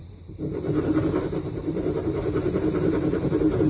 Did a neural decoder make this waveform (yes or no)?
yes